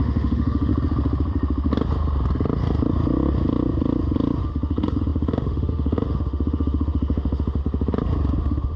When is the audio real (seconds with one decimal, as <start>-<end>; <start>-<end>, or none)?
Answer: 0.7-4.4; 7.6-8.4

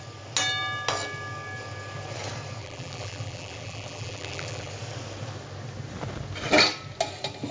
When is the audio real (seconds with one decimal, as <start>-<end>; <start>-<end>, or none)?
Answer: 0.0-2.6; 4.7-7.5

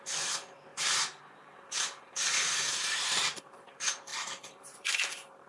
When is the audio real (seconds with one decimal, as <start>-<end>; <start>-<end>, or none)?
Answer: none